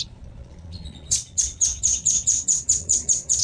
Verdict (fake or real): fake